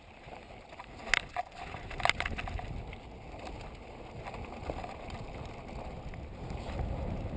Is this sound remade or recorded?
recorded